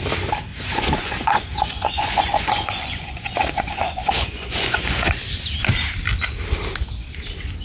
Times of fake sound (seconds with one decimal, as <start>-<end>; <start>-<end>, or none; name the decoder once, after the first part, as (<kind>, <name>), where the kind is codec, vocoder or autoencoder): 0.5-5.1 (vocoder, Vocos)